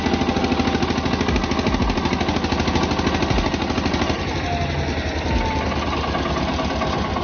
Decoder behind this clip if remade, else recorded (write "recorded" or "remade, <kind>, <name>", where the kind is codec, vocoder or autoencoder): recorded